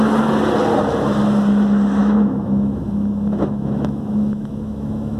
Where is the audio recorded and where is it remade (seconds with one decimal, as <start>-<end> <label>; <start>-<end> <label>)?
0.0-2.0 recorded; 2.0-5.2 remade